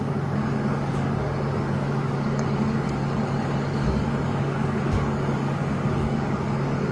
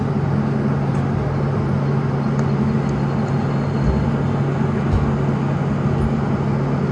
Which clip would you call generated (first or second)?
first